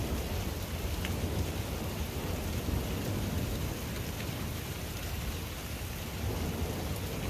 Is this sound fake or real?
real